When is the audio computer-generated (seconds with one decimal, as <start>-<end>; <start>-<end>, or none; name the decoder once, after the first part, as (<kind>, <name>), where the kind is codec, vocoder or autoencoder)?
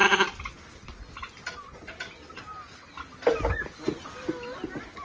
none